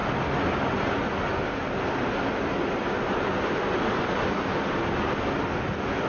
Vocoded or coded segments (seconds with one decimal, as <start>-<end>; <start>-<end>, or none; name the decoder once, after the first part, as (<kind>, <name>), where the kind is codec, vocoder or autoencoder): none